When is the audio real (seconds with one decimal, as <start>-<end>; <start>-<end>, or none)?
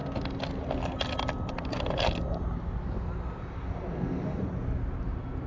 0.0-5.5